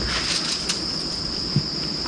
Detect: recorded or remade recorded